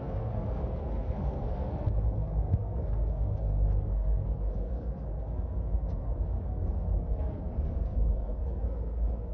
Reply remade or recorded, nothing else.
remade